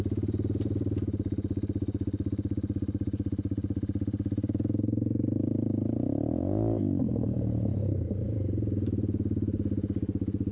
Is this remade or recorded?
remade